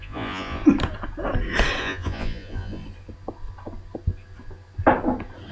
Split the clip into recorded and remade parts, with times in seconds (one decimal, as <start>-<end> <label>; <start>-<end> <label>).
0.0-0.6 remade; 0.6-1.8 recorded; 1.8-2.8 remade; 2.8-5.5 recorded